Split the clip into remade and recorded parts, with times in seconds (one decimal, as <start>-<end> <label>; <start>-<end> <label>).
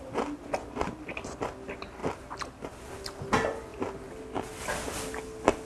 0.0-5.7 recorded